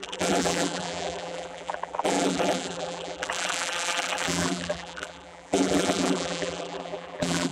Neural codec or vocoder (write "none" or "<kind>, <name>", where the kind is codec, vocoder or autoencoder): vocoder, BigVGAN v2